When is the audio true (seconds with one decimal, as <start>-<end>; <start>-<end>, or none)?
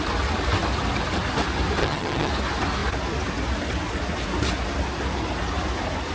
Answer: 0.0-1.8; 2.3-6.1